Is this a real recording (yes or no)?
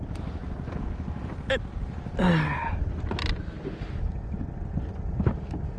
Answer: yes